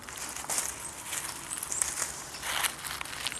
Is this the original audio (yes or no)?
yes